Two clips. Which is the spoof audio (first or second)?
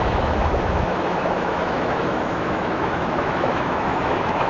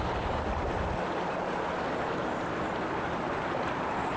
first